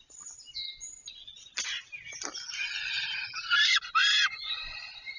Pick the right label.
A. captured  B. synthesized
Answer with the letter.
A